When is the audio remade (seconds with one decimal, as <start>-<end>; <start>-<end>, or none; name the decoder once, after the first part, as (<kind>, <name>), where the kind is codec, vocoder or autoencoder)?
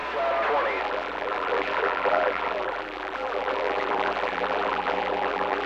0.8-5.7 (vocoder, BigVGAN v2)